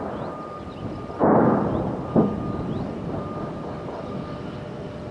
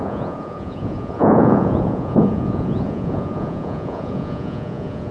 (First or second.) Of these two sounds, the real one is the first